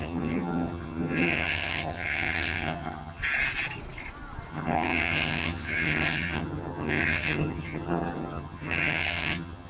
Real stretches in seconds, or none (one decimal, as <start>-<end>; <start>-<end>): 3.2-4.5